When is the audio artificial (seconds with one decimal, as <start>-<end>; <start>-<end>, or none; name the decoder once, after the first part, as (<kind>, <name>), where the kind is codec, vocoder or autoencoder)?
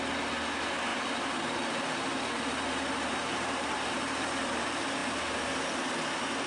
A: 0.9-4.6 (vocoder, BigVGAN v2)